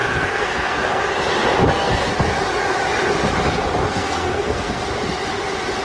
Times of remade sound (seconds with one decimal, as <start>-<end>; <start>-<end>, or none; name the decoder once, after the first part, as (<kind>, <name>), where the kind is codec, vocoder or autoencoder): 0.0-1.0 (codec, SNAC); 1.6-2.1; 3.8-4.8